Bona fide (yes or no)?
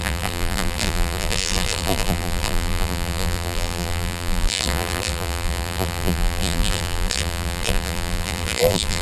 no